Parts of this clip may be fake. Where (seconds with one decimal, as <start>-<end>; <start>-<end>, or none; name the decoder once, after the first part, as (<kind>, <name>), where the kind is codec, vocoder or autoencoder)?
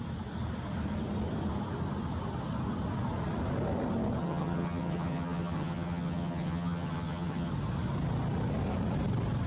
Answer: 4.2-7.5 (vocoder, HiFi-GAN)